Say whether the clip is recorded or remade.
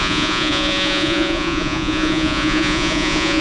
remade